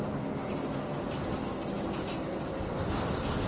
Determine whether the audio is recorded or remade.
recorded